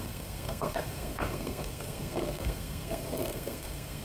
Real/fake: fake